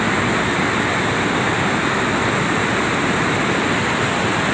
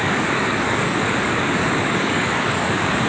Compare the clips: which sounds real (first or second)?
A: first